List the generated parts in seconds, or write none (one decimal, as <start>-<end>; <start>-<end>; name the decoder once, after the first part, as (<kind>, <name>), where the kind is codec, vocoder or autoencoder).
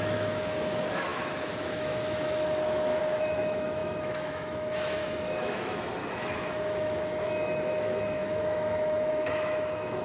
0.0-10.0 (autoencoder, DAC-VAE)